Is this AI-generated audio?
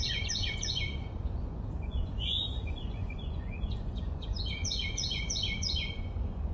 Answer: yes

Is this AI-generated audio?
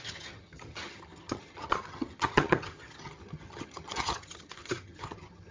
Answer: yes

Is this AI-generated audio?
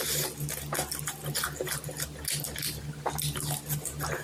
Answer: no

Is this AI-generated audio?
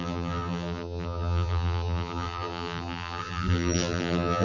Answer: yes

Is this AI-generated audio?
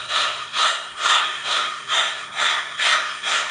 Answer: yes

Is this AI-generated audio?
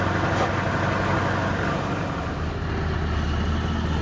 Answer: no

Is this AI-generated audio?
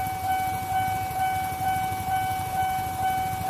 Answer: no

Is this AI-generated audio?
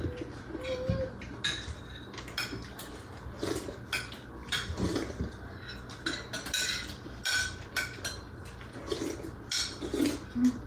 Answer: no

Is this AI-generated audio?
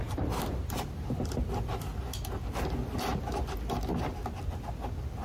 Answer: no